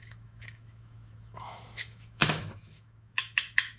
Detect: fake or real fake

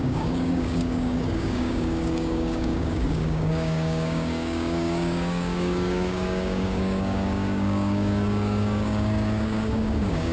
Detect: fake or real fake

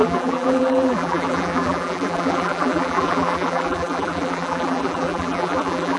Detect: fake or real fake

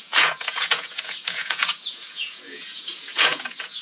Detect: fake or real fake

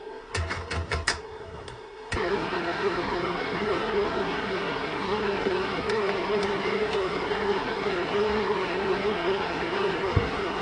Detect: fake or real fake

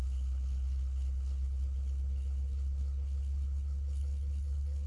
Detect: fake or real fake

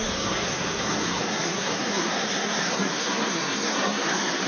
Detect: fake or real fake